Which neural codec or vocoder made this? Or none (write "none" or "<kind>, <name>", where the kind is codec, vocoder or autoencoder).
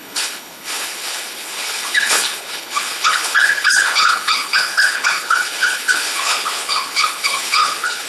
codec, HILCodec